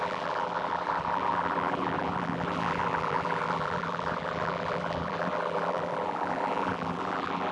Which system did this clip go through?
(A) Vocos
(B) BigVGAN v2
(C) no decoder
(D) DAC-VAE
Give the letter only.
B